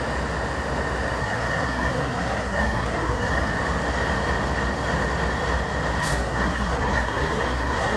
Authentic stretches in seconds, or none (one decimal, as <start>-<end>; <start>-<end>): 0.0-1.2; 3.5-6.0